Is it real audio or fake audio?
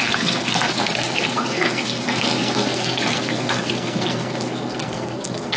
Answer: fake